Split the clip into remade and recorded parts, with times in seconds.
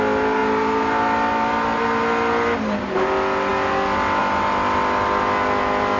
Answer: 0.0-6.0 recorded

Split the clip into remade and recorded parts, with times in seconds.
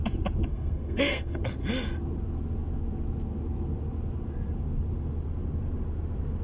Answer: 0.0-0.5 recorded; 0.5-1.4 remade; 1.4-6.4 recorded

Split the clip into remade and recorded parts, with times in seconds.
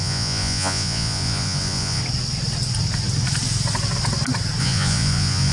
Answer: 0.0-2.0 remade; 2.0-4.6 recorded; 4.6-5.5 remade